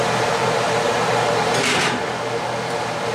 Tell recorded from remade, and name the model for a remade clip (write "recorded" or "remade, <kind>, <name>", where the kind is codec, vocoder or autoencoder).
remade, vocoder, BigVGAN v2